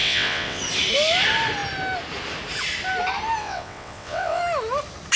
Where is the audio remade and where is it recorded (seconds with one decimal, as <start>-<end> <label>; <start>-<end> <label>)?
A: 0.0-0.6 remade; 0.6-3.4 recorded; 3.4-4.4 remade; 4.4-5.2 recorded